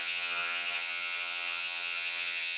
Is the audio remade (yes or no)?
yes